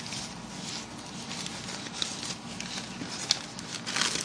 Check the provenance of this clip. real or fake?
real